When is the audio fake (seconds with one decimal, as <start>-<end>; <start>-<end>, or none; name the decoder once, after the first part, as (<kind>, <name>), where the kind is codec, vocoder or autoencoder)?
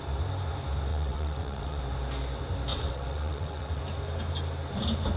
0.9-1.8 (vocoder, WaveNeXt); 2.7-3.8